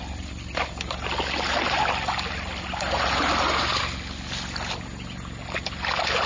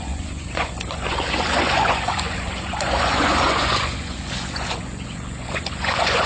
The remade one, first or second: second